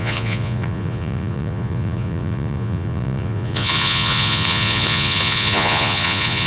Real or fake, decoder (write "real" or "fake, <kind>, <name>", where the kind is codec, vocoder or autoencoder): fake, vocoder, Vocos